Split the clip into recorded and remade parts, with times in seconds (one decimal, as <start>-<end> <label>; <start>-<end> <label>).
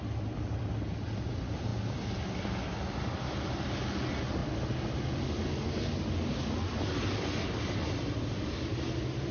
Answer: 0.0-9.3 recorded